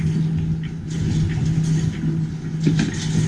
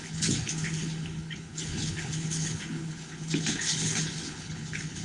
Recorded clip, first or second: first